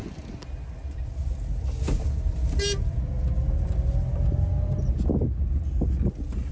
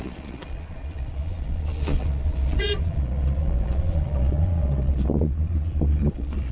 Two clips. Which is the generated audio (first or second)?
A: second